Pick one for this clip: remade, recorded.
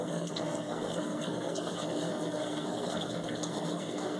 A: remade